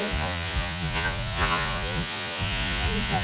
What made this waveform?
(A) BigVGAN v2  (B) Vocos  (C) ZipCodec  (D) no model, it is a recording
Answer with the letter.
B